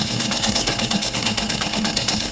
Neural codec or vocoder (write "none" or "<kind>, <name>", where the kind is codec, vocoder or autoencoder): codec, SNAC